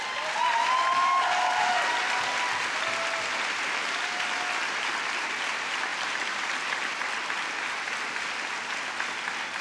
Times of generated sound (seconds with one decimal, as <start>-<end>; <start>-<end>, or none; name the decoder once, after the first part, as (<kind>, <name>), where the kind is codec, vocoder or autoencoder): none